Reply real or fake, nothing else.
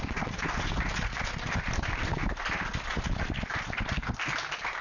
real